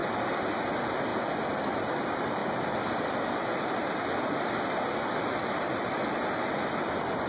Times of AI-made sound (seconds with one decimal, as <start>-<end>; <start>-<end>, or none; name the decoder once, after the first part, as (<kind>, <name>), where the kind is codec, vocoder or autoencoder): 0.7-1.1 (vocoder, BigVGAN v2); 1.6-2.4; 6.8-7.3